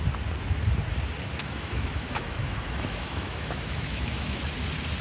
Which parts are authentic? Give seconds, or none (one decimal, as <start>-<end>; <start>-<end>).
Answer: 0.0-1.4; 4.4-5.0